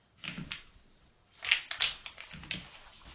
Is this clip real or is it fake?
real